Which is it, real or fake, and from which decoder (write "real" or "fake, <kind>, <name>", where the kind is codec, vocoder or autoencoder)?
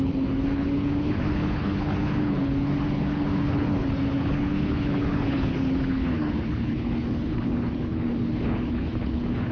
fake, codec, HILCodec